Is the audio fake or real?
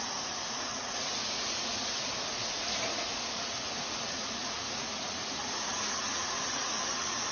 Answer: fake